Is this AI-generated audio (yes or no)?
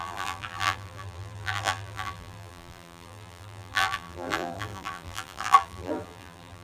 yes